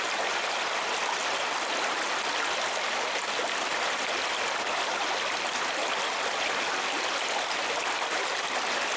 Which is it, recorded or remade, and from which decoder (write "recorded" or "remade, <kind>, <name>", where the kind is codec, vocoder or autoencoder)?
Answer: recorded